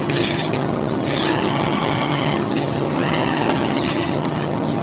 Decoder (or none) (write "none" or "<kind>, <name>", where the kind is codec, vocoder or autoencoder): vocoder, HiFi-GAN